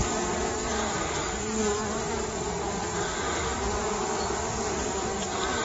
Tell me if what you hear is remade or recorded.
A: recorded